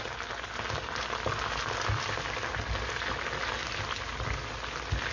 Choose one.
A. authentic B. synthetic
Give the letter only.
A